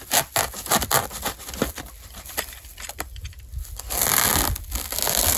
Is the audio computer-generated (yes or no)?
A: no